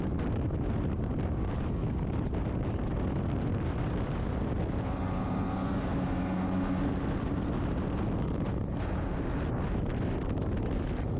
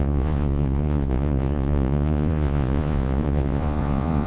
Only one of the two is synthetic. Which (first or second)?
second